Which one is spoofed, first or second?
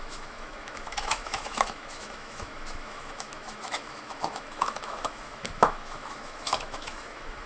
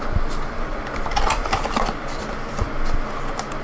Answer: first